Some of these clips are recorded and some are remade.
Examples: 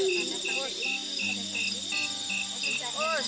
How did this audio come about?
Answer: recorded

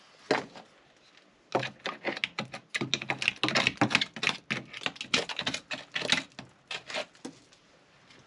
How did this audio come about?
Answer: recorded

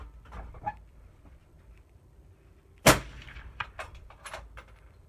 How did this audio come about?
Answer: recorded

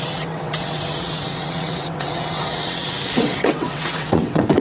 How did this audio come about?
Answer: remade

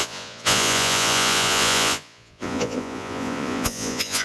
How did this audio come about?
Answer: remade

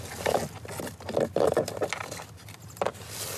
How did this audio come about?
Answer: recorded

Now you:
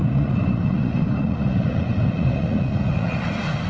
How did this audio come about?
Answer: remade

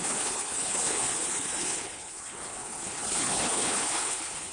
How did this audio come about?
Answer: remade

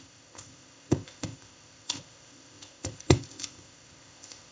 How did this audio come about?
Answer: remade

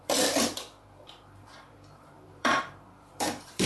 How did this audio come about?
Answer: remade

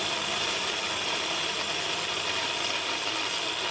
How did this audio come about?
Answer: remade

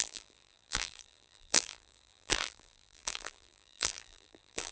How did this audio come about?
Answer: remade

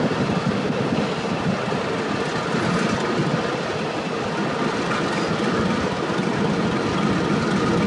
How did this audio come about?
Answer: recorded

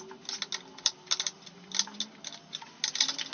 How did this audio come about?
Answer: recorded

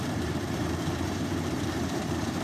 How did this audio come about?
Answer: remade